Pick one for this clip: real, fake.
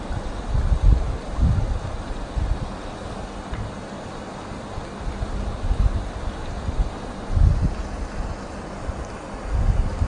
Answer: real